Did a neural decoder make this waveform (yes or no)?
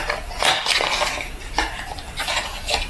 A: no